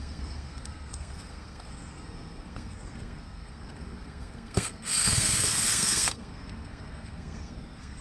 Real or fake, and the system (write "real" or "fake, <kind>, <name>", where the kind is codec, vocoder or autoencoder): fake, codec, SNAC